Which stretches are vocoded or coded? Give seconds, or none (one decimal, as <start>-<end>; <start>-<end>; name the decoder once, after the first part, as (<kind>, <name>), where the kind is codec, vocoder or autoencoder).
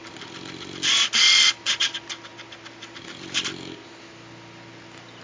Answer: none